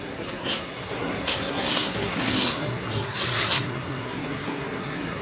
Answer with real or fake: fake